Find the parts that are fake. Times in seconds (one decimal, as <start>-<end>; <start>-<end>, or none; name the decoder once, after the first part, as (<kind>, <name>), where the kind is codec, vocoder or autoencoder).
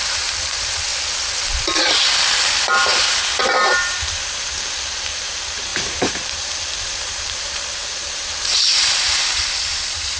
0.0-0.9 (vocoder, BigVGAN v2); 1.8-10.2